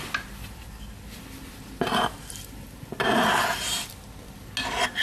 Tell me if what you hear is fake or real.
real